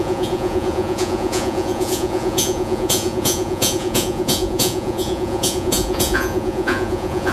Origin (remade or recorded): remade